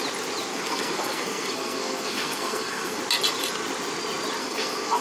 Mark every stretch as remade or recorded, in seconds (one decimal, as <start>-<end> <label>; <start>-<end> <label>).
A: 0.0-0.5 recorded; 0.5-3.0 remade; 3.0-4.4 recorded; 4.4-5.0 remade